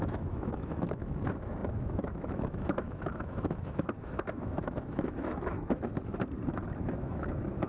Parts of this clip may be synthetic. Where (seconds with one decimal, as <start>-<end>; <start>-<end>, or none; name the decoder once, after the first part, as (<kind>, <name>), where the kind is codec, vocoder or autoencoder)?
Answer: 0.0-5.9 (autoencoder, DAC-VAE); 6.8-7.7